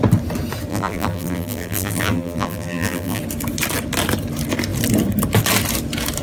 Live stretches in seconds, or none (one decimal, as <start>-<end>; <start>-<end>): 0.0-0.7; 3.2-6.2